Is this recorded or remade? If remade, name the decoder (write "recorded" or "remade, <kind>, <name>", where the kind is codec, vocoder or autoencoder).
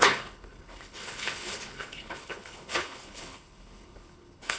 remade, codec, HILCodec